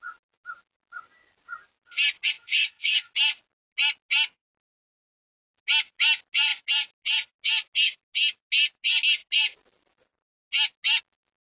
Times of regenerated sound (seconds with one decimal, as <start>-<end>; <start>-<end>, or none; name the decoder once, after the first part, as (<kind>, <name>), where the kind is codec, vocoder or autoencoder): 2.4-3.1 (autoencoder, DAC-VAE)

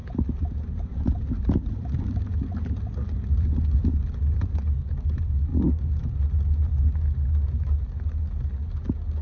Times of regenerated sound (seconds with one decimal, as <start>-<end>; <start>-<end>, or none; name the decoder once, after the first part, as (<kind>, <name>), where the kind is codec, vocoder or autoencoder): 0.0-2.0 (vocoder, BigVGAN v2); 5.5-6.1

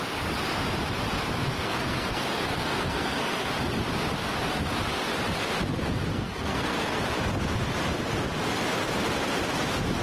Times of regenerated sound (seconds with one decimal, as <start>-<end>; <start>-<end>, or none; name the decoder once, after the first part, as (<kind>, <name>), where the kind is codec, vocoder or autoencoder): 1.5-3.5 (codec, SNAC); 6.1-7.0

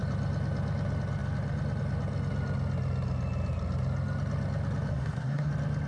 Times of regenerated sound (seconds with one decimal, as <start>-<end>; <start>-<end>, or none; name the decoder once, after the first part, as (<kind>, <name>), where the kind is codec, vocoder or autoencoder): 4.9-5.5 (codec, SNAC)

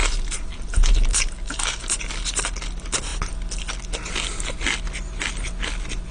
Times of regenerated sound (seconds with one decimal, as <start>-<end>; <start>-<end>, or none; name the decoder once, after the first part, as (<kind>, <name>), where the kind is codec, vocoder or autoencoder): 0.0-2.1 (vocoder, BigVGAN v2)

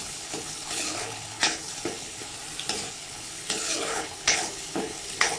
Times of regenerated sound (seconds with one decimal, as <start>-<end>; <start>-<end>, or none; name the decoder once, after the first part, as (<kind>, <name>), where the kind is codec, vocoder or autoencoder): 0.0-2.3 (codec, HILCodec); 2.9-5.4

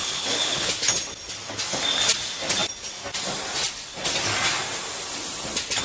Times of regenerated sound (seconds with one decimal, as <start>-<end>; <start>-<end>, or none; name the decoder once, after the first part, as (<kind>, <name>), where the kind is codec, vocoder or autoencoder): 0.0-0.7 (codec, HILCodec)